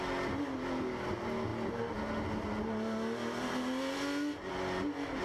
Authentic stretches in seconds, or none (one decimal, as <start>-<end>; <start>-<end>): 0.0-5.2